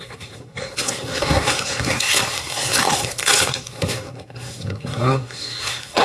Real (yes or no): no